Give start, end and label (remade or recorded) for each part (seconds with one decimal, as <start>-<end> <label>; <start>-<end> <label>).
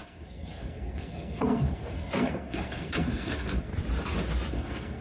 0.0-3.7 remade; 3.7-4.5 recorded; 4.5-5.0 remade